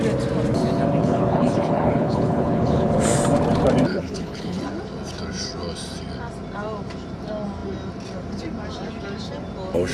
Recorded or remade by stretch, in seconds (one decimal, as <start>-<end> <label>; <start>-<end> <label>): 0.0-1.0 recorded; 1.0-2.9 remade; 2.9-3.9 recorded; 3.9-4.6 remade; 4.6-9.9 recorded